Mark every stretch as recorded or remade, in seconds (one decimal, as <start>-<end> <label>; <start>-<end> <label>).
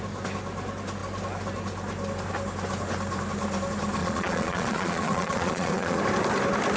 0.0-4.0 recorded; 4.0-6.0 remade; 6.0-6.8 recorded